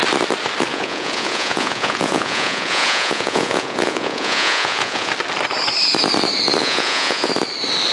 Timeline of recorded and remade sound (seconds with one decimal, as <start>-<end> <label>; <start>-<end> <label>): 0.0-0.7 recorded; 0.7-5.1 remade; 5.1-6.6 recorded; 6.6-7.3 remade; 7.3-7.9 recorded